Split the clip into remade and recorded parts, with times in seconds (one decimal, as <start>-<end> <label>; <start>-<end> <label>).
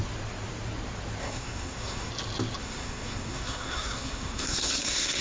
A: 0.0-1.2 recorded; 1.2-2.1 remade; 2.1-2.6 recorded; 2.6-5.2 remade